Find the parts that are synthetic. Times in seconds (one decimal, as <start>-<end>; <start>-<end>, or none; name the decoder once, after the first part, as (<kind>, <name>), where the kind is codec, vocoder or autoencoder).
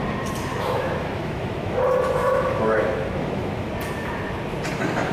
0.5-1.8 (autoencoder, DAC-VAE); 2.2-3.7